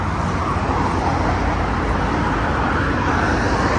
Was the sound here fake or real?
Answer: real